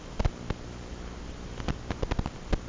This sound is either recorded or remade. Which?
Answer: recorded